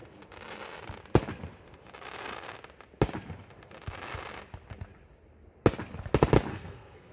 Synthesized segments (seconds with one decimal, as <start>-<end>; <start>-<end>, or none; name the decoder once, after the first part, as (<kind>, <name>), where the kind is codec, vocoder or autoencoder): 6.5-7.1 (codec, SNAC)